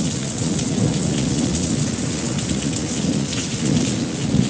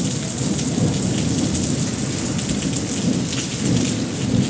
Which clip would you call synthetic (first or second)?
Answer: first